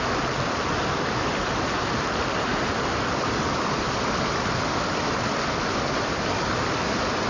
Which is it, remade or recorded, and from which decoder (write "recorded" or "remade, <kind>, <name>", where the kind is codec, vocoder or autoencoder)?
recorded